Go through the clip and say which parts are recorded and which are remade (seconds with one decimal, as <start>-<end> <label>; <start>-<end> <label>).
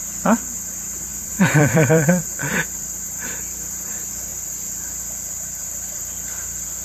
0.0-4.3 remade; 4.3-5.6 recorded; 5.6-6.8 remade